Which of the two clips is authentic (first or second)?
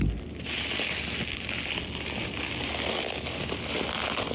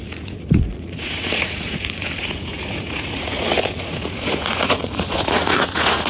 first